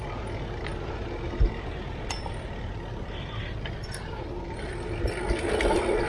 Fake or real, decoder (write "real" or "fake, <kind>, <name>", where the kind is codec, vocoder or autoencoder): real